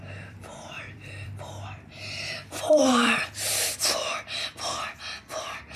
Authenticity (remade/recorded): remade